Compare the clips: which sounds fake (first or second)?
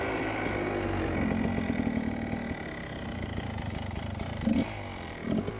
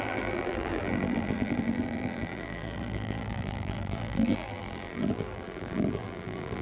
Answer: second